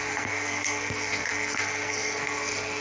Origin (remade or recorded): remade